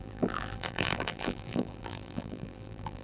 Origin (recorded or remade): remade